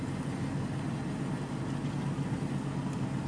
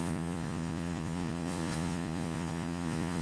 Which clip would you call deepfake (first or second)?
second